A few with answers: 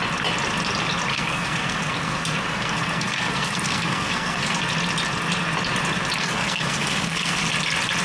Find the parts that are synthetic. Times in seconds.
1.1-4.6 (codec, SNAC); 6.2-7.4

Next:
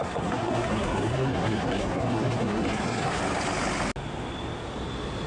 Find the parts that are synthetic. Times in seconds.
0.0-3.2 (codec, SNAC)

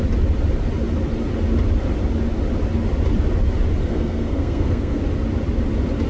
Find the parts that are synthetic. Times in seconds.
3.8-5.0 (codec, SNAC)

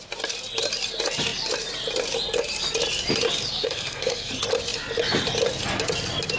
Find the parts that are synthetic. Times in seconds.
3.5-4.3 (codec, SNAC)

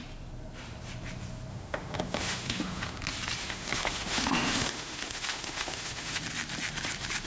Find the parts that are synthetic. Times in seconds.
1.5-3.0 (autoencoder, DAC-VAE); 3.4-6.2

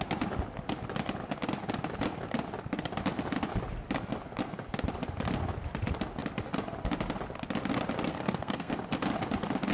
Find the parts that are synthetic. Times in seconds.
8.1-8.7 (codec, SNAC)